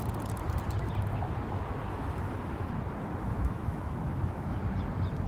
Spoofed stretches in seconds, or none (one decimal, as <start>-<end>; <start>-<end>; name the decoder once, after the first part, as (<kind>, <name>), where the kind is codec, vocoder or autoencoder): 1.9-2.7 (autoencoder, DAC-VAE); 3.2-4.6